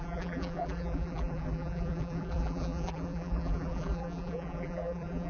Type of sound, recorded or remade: remade